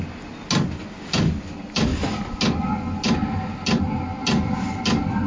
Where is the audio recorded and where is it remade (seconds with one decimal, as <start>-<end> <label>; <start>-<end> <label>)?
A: 0.0-5.3 recorded